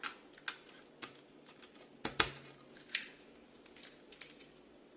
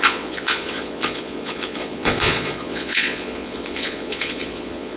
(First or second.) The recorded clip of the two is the first